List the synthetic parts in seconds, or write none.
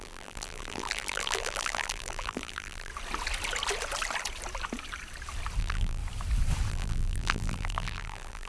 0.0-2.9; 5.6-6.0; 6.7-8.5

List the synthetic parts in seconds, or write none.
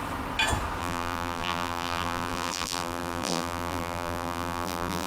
0.8-5.1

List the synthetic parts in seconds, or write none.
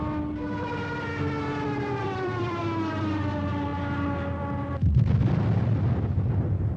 2.0-2.6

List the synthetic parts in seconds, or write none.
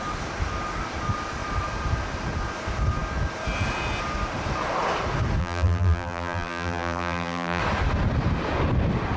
5.4-7.6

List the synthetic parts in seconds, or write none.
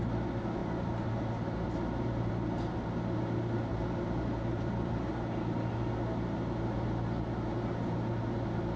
0.6-2.3; 3.7-5.1